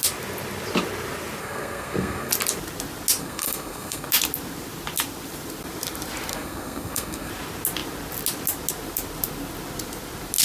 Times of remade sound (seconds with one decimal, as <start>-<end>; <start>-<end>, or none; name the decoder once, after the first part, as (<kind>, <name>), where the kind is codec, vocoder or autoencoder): 1.4-2.3 (codec, SNAC); 3.2-4.1; 6.3-7.3

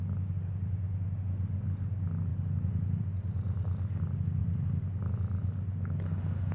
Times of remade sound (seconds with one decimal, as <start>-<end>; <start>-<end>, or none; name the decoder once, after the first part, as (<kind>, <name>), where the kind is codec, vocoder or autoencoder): none

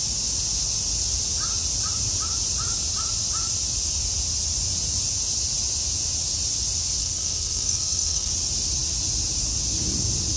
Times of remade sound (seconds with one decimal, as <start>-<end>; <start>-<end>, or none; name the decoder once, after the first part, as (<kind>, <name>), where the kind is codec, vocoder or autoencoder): 7.0-8.3 (codec, SNAC)